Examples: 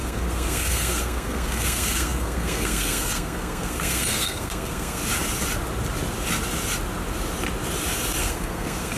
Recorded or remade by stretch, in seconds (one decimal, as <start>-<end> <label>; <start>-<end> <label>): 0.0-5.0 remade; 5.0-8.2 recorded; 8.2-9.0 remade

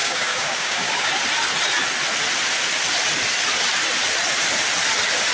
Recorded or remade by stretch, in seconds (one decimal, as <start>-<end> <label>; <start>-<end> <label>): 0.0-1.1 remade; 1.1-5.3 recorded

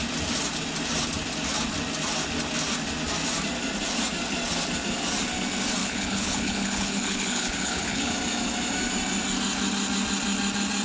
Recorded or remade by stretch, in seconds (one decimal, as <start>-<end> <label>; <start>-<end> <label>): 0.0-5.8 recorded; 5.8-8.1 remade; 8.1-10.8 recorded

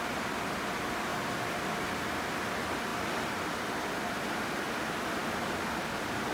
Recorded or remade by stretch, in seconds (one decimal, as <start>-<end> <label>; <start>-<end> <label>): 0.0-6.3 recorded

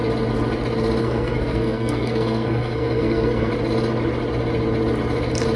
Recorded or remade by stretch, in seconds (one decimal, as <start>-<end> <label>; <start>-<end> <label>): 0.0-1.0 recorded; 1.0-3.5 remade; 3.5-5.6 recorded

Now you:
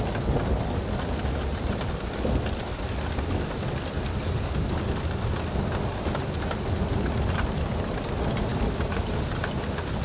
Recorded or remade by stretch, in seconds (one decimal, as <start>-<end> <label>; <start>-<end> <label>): 0.0-10.0 recorded